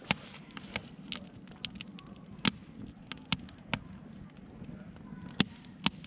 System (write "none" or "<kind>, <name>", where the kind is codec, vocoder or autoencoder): none